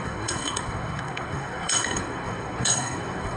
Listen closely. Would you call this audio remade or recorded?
remade